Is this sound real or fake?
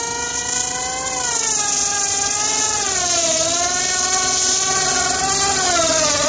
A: real